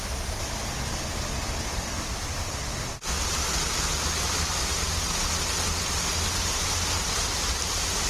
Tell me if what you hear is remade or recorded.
recorded